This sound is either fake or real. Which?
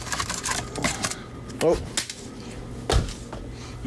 real